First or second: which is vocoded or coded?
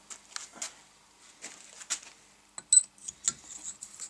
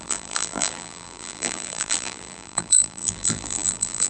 second